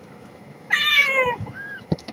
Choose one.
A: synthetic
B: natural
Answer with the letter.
A